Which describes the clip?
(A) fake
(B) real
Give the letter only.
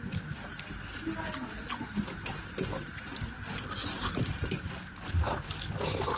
B